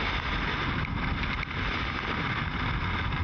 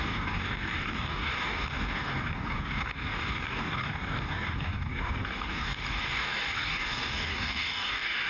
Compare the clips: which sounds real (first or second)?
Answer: first